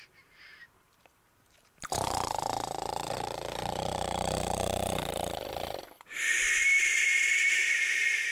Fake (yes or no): yes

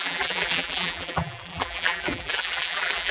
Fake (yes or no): yes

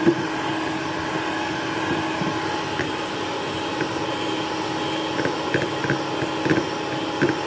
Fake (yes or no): no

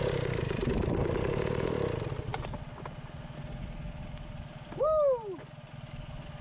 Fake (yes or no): no